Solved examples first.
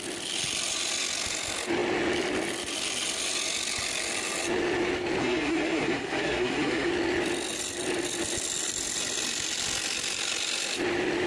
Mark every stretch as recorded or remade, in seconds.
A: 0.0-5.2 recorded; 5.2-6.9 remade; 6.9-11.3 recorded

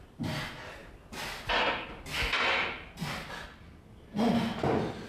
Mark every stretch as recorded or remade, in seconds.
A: 0.0-5.1 recorded

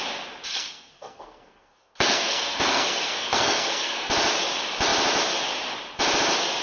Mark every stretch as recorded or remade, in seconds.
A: 0.0-0.5 recorded; 0.5-4.1 remade; 4.1-6.6 recorded

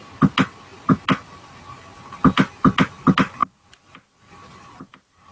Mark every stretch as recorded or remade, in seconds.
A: 0.0-5.3 recorded

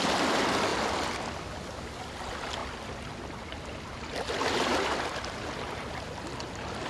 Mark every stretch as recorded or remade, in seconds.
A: 0.0-6.9 recorded

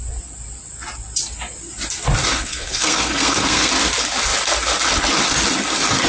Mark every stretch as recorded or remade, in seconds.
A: 0.0-2.2 recorded; 2.2-3.7 remade; 3.7-6.1 recorded